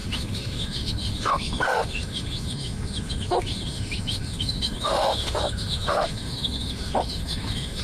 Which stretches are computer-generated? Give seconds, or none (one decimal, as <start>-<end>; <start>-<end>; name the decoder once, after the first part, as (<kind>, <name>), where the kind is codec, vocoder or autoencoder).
0.0-7.8 (autoencoder, DAC-VAE)